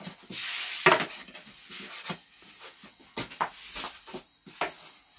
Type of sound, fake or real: real